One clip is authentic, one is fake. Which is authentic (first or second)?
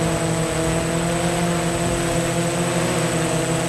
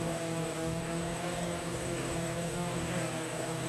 first